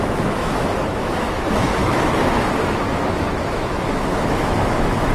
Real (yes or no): no